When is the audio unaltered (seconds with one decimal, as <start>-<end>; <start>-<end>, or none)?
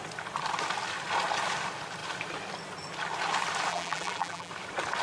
0.0-3.7; 4.5-5.0